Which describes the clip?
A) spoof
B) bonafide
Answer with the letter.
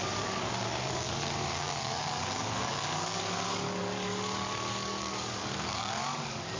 A